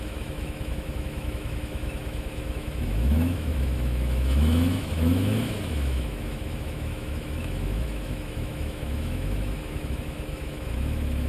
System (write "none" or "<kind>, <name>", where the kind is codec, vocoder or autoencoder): autoencoder, DAC-VAE